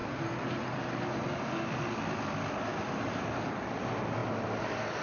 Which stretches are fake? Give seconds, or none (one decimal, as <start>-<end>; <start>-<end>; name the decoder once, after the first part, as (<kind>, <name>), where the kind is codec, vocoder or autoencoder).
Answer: 2.7-3.8 (vocoder, BigVGAN v2)